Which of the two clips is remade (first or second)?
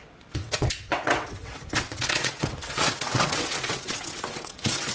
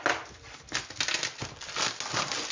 first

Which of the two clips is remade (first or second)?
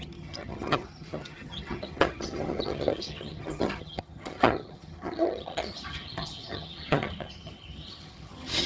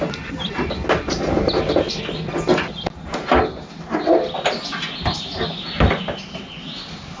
first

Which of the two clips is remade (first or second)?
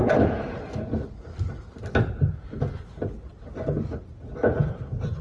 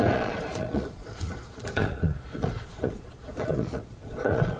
second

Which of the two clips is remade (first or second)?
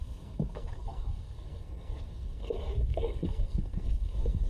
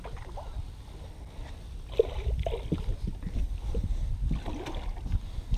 first